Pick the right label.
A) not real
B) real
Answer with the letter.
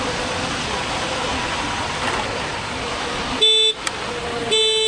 B